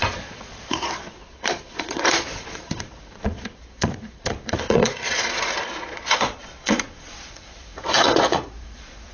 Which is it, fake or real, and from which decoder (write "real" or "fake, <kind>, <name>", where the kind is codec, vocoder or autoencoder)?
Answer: fake, vocoder, Vocos